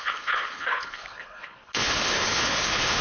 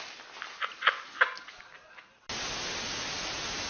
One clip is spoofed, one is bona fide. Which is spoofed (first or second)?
first